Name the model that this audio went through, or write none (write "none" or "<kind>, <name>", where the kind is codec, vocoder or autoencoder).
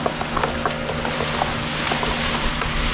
none